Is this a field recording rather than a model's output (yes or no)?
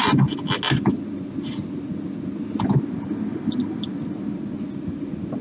yes